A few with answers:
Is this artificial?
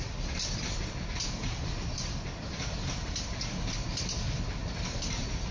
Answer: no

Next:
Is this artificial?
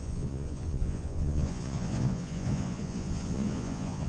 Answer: yes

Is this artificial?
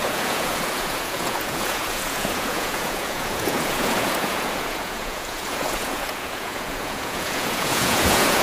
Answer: yes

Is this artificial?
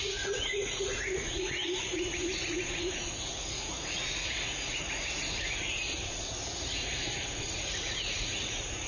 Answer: yes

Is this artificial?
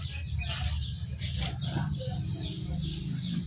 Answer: no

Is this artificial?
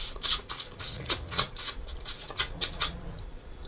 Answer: yes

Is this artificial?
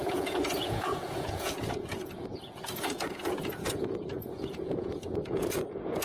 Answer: yes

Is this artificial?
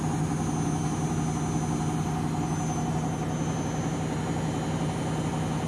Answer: no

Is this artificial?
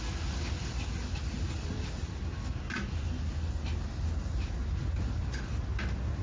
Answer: no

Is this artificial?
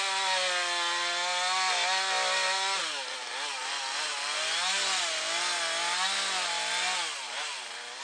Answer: no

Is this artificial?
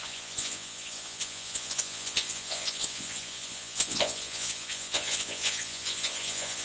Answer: yes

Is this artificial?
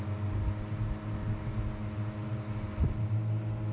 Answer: no